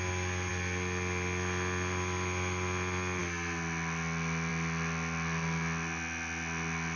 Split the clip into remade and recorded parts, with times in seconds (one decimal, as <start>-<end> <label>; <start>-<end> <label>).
0.0-7.0 recorded